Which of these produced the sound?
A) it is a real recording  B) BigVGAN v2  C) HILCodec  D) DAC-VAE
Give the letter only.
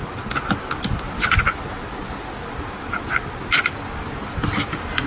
A